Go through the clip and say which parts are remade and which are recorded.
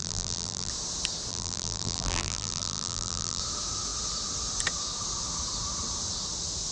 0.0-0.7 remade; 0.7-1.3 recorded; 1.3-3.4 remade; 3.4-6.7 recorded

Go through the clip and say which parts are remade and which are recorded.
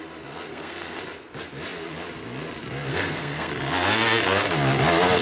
0.0-0.5 recorded; 0.5-1.0 remade; 1.0-2.9 recorded; 2.9-3.5 remade; 3.5-5.2 recorded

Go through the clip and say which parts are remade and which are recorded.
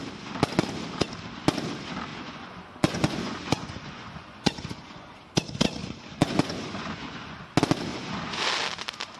0.0-2.1 recorded; 2.1-5.2 remade; 5.2-5.8 recorded; 5.8-7.4 remade; 7.4-7.9 recorded; 7.9-8.4 remade; 8.4-9.2 recorded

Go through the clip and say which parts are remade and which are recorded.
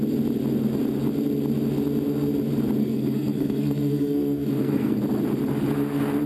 0.0-2.8 recorded; 2.8-5.0 remade; 5.0-6.3 recorded